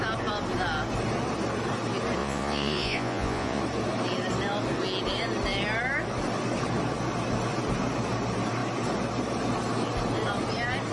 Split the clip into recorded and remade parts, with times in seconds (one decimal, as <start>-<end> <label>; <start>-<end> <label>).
0.0-2.2 recorded; 2.2-3.6 remade; 3.6-10.9 recorded